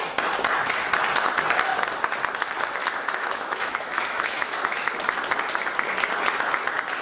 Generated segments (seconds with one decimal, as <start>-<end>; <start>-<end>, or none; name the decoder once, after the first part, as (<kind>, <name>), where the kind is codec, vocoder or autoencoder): 2.8-4.9 (autoencoder, DAC-VAE)